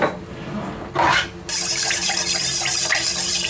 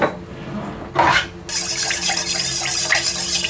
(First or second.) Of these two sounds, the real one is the second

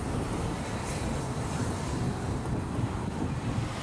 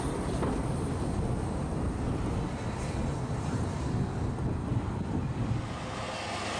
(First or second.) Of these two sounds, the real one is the second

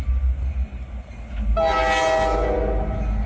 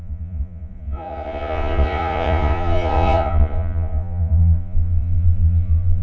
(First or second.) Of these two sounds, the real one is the first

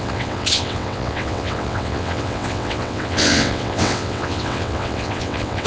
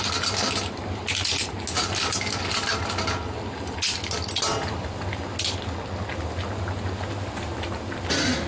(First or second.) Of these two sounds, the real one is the second